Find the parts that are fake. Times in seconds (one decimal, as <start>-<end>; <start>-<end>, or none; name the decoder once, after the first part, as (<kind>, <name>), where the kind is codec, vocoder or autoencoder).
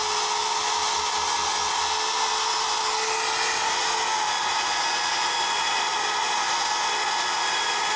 none